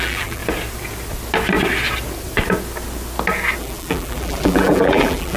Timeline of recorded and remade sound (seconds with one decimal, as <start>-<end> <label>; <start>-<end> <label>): 0.0-0.4 remade; 0.4-3.6 recorded; 3.6-5.4 remade